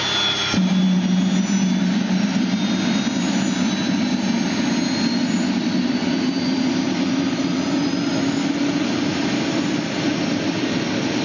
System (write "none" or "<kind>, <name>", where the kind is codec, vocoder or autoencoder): none